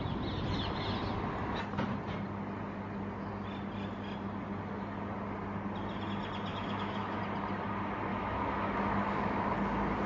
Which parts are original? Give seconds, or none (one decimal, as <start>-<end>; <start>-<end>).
0.0-6.5; 7.2-8.1; 9.4-10.1